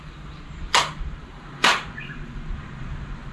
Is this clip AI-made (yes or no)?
yes